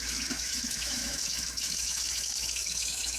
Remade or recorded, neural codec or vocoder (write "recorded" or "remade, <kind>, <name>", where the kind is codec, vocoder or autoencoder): remade, autoencoder, DAC-VAE